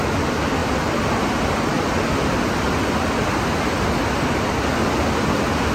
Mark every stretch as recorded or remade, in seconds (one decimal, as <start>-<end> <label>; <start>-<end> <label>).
0.0-5.7 recorded